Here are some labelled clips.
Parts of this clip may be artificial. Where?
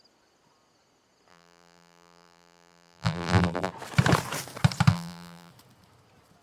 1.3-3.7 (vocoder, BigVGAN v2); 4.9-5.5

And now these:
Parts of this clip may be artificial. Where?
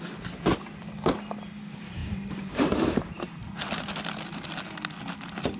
2.0-3.9 (vocoder, BigVGAN v2)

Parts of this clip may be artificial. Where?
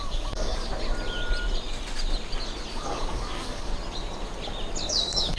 0.0-0.7 (codec, DAC); 2.7-3.7; 4.9-5.4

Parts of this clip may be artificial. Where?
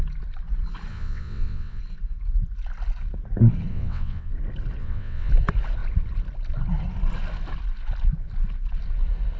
0.9-1.8 (vocoder, WaveNeXt); 3.7-4.3; 4.8-5.3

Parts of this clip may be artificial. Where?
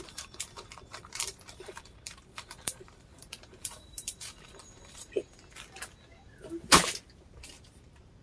0.0-5.1 (vocoder, BigVGAN v2); 7.3-8.2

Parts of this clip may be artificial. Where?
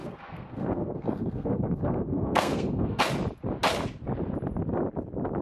0.0-3.0 (codec, SNAC)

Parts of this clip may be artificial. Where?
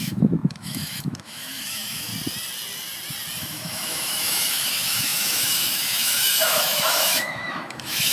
0.0-2.1 (autoencoder, DAC-VAE); 3.4-8.1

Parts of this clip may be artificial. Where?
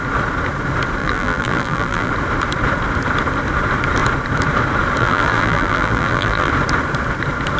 1.0-2.1 (vocoder, BigVGAN v2); 5.0-6.5